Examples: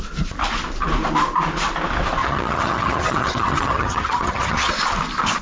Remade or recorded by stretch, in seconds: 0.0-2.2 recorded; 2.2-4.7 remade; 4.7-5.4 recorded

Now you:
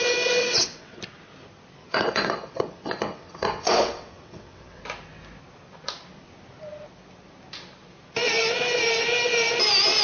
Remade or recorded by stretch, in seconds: 0.0-0.4 recorded; 0.4-1.0 remade; 1.0-1.8 recorded; 1.8-4.8 remade; 4.8-10.0 recorded

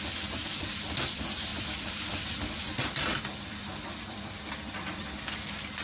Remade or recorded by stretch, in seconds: 0.0-5.8 recorded

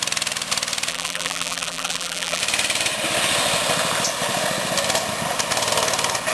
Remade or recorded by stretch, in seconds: 0.0-0.9 recorded; 0.9-2.4 remade; 2.4-6.3 recorded

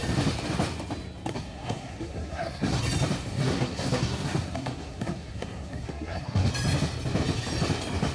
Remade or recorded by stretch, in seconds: 0.0-1.3 recorded; 1.3-2.8 remade; 2.8-3.3 recorded; 3.3-6.5 remade; 6.5-8.1 recorded